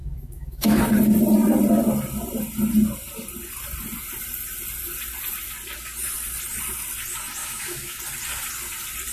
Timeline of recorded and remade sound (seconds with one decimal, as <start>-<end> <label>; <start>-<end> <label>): 0.0-0.8 remade; 0.8-7.4 recorded; 7.4-8.0 remade; 8.0-9.1 recorded

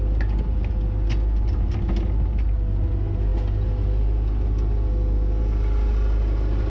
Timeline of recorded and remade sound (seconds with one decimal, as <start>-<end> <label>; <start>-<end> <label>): 0.0-6.7 recorded

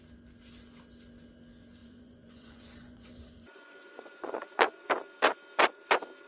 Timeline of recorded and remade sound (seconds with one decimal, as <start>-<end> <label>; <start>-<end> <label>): 0.0-1.8 recorded; 1.8-4.8 remade; 4.8-6.3 recorded